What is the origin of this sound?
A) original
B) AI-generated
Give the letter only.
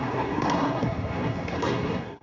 B